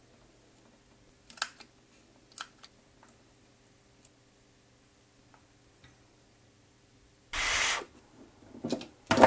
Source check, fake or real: real